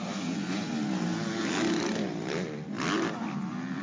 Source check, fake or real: real